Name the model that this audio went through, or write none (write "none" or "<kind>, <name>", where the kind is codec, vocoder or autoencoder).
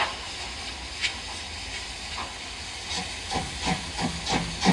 none